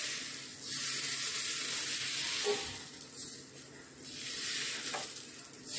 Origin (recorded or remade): recorded